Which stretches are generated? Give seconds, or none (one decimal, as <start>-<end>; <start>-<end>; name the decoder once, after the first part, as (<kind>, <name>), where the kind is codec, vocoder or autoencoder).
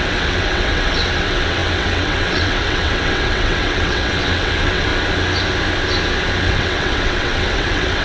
0.0-4.9 (vocoder, WaveNeXt); 6.4-8.0